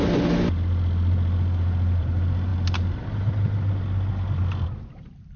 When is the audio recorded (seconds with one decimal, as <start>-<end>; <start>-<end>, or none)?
0.0-5.4

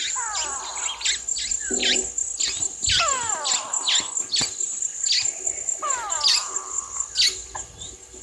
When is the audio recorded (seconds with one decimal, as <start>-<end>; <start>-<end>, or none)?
0.0-8.2

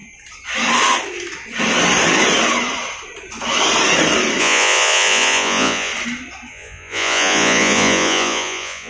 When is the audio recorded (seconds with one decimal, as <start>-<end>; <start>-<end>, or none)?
0.0-4.4; 5.9-6.5

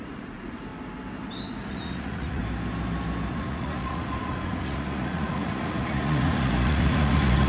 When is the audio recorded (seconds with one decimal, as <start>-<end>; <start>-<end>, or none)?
0.7-1.7; 2.4-3.3